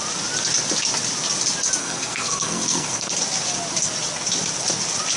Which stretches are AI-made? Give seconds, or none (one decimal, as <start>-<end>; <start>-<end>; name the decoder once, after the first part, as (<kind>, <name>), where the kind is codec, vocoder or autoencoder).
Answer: 1.8-3.1 (codec, SNAC)